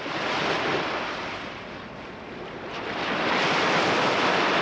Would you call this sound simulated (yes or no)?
yes